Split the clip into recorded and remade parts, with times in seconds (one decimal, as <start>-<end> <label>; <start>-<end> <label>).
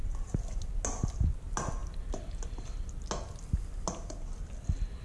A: 0.0-5.0 recorded